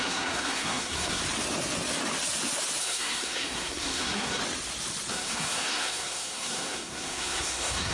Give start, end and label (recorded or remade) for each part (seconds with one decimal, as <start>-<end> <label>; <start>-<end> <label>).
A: 0.0-1.2 remade; 1.2-2.8 recorded; 2.8-4.4 remade; 4.4-5.1 recorded; 5.1-7.9 remade